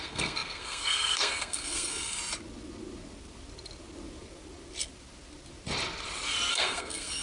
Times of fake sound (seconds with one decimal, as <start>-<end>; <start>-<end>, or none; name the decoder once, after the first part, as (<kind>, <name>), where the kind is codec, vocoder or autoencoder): 0.0-2.2 (codec, SNAC); 6.5-7.2